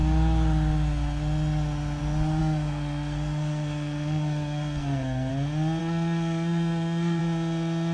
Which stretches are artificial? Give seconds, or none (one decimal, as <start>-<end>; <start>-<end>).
2.4-5.3; 5.8-7.2